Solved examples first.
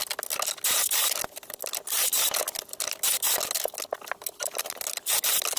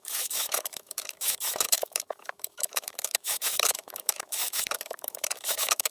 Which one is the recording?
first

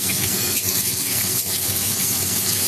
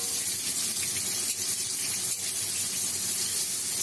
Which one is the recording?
second